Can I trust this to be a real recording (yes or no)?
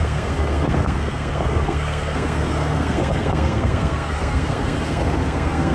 no